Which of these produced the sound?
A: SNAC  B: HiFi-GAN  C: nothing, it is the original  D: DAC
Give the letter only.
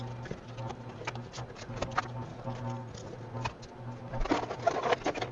C